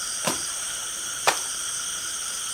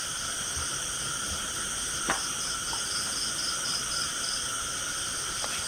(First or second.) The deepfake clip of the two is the first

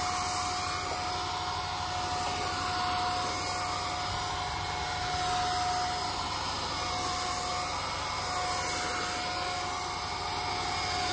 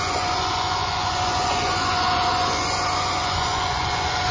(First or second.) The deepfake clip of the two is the second